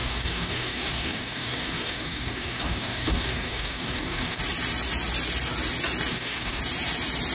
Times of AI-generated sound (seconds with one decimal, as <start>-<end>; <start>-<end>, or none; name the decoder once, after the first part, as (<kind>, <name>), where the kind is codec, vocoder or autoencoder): 0.0-4.4 (codec, DAC); 6.1-6.6